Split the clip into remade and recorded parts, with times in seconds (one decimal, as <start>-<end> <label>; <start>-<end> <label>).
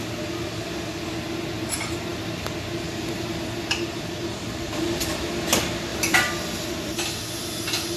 0.0-2.1 recorded; 2.1-5.3 remade; 5.3-5.9 recorded; 5.9-7.4 remade; 7.4-8.0 recorded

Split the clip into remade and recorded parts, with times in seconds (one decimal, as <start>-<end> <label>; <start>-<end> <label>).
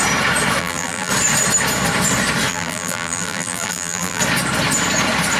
0.0-0.6 recorded; 0.6-1.1 remade; 1.1-2.5 recorded; 2.5-4.2 remade; 4.2-5.4 recorded